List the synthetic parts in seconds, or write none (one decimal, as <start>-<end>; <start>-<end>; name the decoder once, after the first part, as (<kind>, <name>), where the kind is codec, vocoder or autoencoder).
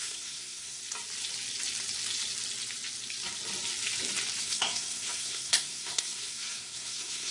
0.0-0.8 (codec, SNAC); 4.4-7.3